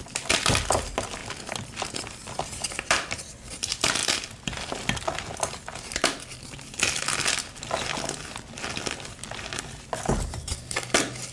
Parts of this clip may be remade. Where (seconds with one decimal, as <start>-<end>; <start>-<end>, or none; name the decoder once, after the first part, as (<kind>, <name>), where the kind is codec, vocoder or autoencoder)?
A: none